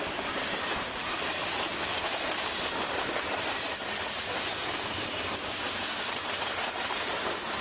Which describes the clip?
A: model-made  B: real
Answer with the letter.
A